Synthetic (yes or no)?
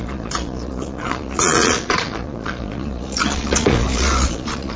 yes